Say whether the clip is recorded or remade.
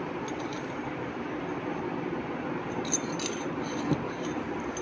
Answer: recorded